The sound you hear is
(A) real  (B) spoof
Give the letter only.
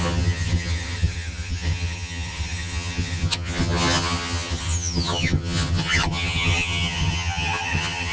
B